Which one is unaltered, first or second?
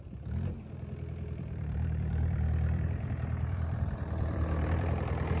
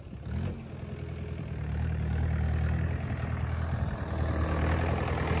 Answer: second